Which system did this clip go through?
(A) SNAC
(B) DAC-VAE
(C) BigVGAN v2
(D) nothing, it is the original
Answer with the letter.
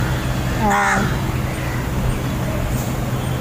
D